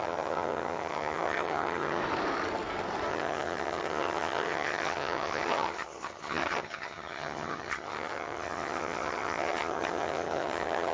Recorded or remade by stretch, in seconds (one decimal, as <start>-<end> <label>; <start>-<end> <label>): 0.0-2.0 remade; 2.0-3.1 recorded; 3.1-10.9 remade